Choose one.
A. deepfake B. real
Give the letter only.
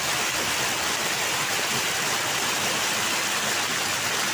B